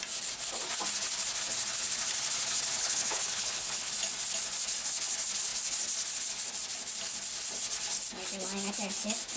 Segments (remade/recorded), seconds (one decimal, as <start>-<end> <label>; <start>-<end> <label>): 0.0-2.8 recorded; 2.8-3.9 remade; 3.9-9.4 recorded